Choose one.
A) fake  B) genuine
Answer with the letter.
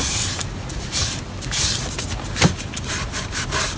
B